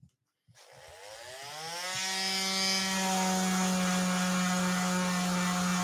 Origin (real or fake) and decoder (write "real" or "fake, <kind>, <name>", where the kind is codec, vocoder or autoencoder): real